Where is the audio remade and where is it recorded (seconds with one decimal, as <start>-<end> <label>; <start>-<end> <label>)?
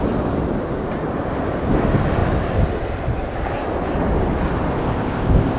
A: 0.0-4.8 recorded; 4.8-5.6 remade